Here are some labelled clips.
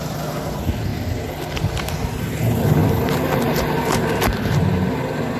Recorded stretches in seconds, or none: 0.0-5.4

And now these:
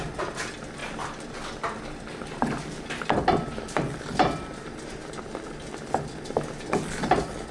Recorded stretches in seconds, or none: 0.0-7.5

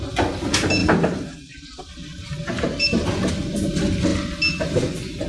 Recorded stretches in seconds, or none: 0.0-0.8; 3.3-5.3

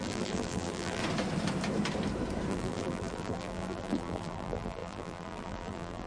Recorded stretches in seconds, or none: 1.0-2.5